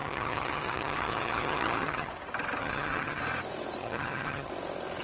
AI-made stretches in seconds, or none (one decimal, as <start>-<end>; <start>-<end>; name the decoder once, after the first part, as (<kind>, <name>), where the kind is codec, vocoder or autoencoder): 0.0-2.1 (vocoder, HiFi-GAN); 2.6-3.2; 3.8-4.5